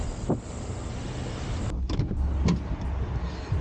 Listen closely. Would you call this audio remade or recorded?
recorded